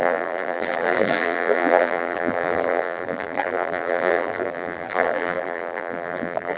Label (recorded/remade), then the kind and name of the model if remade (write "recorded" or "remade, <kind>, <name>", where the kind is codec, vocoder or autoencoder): remade, vocoder, BigVGAN v2